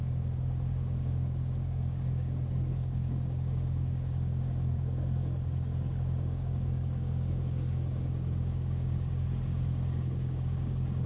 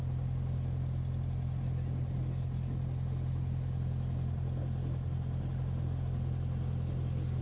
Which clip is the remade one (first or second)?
first